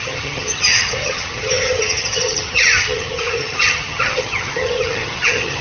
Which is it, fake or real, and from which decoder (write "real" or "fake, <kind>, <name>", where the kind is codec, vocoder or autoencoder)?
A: fake, vocoder, HiFi-GAN